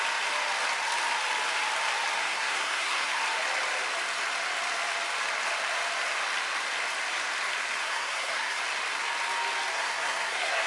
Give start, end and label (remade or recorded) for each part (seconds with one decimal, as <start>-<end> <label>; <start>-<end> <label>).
0.0-2.2 recorded; 2.2-3.2 remade; 3.2-7.8 recorded; 7.8-8.6 remade; 8.6-9.7 recorded; 9.7-10.7 remade

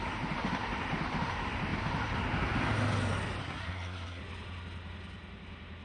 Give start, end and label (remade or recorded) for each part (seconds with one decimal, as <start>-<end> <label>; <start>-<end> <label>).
0.0-3.4 recorded; 3.4-4.2 remade; 4.2-5.8 recorded

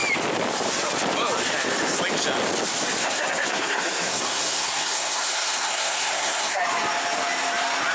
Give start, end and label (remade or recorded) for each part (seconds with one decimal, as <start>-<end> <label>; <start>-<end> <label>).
0.0-3.0 recorded; 3.0-6.6 remade; 6.6-7.9 recorded

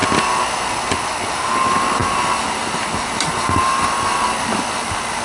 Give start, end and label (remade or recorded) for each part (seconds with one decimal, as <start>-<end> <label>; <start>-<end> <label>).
0.0-5.2 recorded

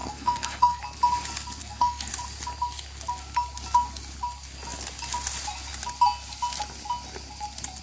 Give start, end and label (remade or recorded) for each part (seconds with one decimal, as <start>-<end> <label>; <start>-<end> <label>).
0.0-0.8 remade; 0.8-1.6 recorded; 1.6-2.1 remade; 2.1-7.8 recorded

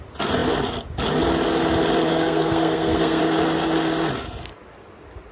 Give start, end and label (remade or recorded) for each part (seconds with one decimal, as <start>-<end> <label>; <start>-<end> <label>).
0.0-2.1 recorded; 2.1-3.2 remade; 3.2-5.3 recorded